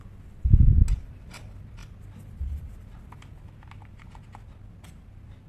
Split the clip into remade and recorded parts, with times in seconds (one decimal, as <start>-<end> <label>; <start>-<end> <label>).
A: 0.0-5.5 recorded